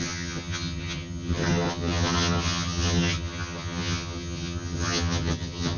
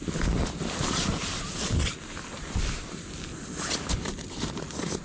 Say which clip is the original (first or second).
second